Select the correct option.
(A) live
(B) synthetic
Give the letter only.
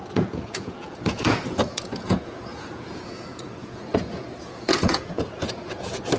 B